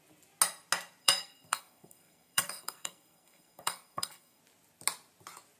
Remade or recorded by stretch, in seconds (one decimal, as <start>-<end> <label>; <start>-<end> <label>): 0.0-1.0 recorded; 1.0-4.4 remade; 4.4-5.6 recorded

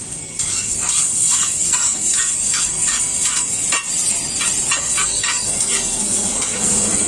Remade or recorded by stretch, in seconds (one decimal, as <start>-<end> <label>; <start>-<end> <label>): 0.0-3.6 remade; 3.6-4.8 recorded; 4.8-7.1 remade

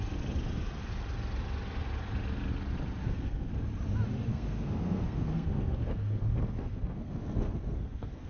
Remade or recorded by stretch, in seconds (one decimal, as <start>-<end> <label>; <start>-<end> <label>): 0.0-3.0 recorded; 3.0-3.5 remade; 3.5-4.3 recorded; 4.3-8.3 remade

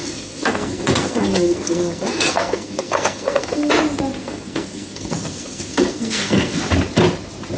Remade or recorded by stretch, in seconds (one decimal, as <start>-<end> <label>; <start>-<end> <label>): 0.0-3.7 remade; 3.7-4.2 recorded; 4.2-6.6 remade; 6.6-7.6 recorded

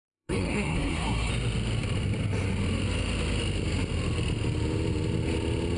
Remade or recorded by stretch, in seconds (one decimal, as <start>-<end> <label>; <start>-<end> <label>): 0.0-1.3 remade; 1.3-5.8 recorded

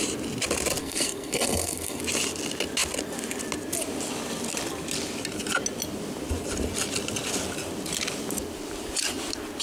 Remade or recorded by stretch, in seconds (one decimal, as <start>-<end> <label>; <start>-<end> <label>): 0.0-0.8 recorded; 0.8-2.0 remade; 2.0-9.6 recorded

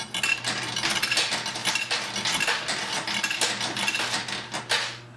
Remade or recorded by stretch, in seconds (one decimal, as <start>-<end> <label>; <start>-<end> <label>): 0.0-5.2 recorded

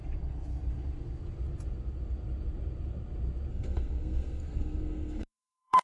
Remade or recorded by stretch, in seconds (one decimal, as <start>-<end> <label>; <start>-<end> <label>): 0.0-3.5 recorded; 3.5-5.8 remade